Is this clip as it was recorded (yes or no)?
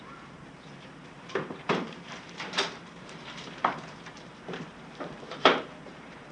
no